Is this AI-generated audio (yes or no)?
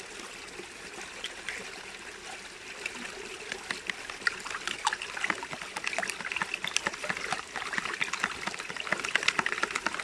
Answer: no